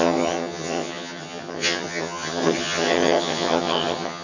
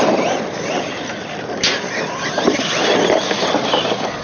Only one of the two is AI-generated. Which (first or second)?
first